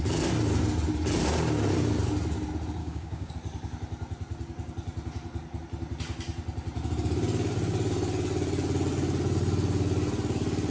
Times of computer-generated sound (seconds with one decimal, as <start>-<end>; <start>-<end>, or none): 2.8-3.3